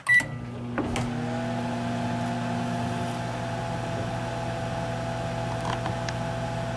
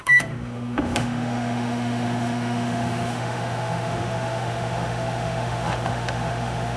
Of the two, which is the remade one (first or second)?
second